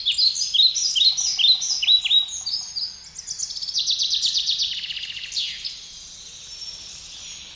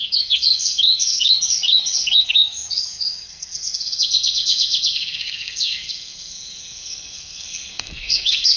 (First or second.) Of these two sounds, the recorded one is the first